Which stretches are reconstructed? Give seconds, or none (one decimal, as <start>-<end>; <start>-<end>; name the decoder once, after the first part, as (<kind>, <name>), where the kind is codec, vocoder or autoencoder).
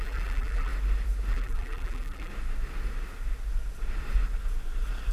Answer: 0.0-0.7 (vocoder, BigVGAN v2); 1.3-2.3